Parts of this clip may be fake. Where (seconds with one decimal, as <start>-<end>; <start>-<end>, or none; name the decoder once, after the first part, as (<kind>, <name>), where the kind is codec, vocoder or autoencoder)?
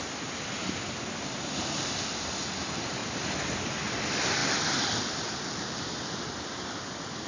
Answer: none